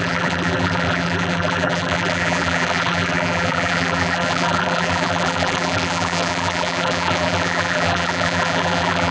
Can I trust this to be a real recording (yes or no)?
no